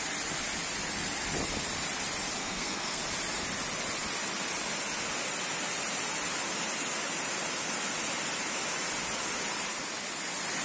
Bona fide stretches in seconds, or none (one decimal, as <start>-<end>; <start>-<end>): 0.0-2.4; 3.0-10.6